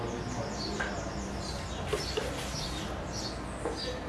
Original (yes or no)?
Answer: yes